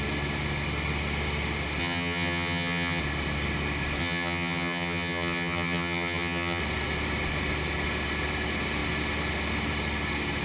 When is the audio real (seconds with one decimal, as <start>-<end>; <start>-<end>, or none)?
0.0-1.8; 3.0-4.0; 6.6-10.4